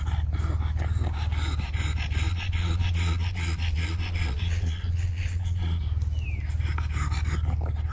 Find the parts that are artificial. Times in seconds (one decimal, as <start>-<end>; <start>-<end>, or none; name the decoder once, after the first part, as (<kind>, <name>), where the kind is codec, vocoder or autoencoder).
2.3-5.8 (vocoder, Vocos)